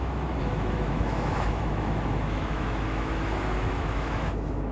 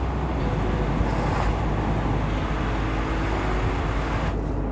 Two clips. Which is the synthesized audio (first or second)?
first